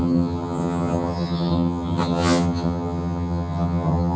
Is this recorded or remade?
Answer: remade